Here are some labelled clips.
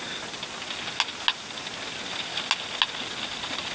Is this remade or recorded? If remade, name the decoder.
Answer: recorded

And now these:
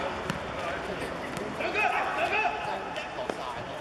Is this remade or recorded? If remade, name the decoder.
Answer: recorded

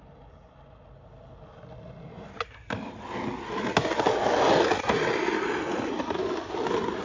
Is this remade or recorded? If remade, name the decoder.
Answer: recorded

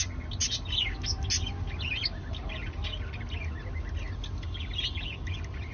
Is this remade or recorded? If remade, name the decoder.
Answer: recorded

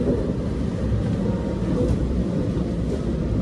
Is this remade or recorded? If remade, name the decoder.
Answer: recorded